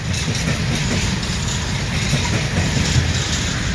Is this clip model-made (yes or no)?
no